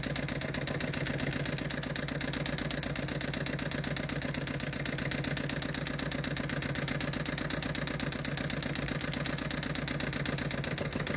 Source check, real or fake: real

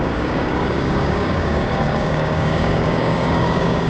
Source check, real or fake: fake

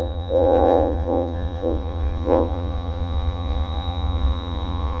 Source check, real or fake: fake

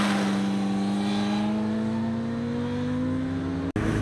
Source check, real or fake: real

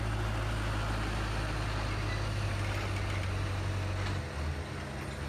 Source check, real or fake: real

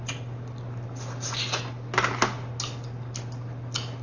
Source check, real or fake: real